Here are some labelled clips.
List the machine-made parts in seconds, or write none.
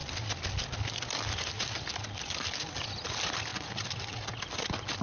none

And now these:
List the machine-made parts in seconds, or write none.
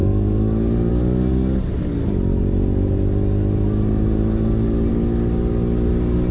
0.0-0.9 (codec, DAC)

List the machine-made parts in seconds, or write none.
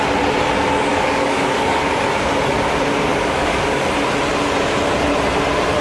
0.9-1.8 (codec, DAC); 3.1-3.9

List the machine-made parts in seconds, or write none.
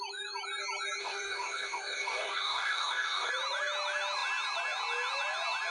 1.0-3.3 (codec, DAC)